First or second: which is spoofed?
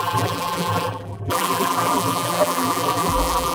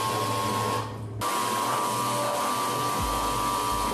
first